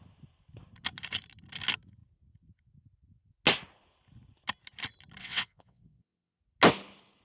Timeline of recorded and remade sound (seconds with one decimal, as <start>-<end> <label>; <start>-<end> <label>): 0.0-5.2 recorded; 5.2-6.4 remade; 6.4-7.2 recorded